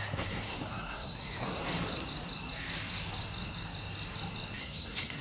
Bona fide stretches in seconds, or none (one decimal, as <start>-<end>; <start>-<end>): 1.6-4.6